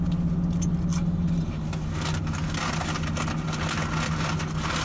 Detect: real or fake real